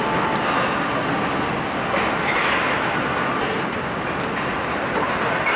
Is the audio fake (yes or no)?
no